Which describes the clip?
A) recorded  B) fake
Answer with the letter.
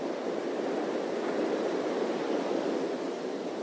B